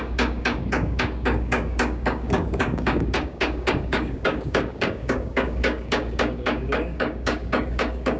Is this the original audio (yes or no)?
no